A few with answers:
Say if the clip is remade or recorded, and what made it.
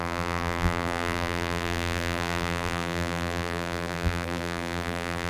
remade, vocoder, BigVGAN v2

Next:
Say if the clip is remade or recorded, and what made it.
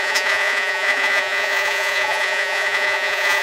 remade, vocoder, Vocos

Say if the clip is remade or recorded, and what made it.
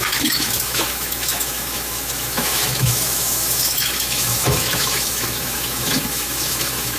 remade, autoencoder, DAC-VAE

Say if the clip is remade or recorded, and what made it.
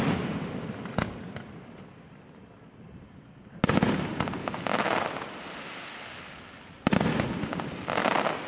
recorded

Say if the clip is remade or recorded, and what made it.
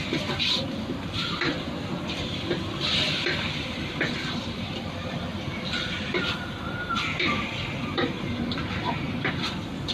remade, vocoder, BigVGAN v2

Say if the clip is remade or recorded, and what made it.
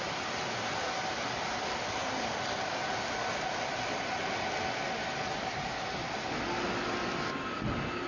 recorded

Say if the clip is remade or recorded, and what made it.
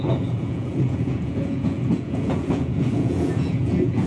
remade, vocoder, Vocos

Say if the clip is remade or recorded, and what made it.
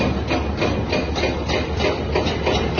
recorded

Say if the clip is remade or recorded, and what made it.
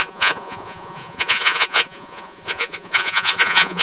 remade, vocoder, Vocos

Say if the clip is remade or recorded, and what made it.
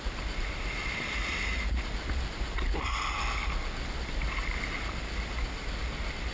recorded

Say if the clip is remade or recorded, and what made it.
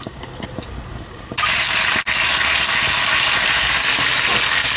recorded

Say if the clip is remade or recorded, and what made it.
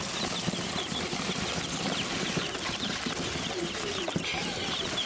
recorded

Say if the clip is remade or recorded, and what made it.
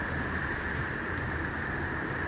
recorded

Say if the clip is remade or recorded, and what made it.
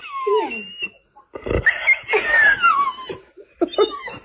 recorded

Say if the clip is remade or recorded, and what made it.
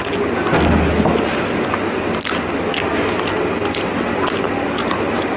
recorded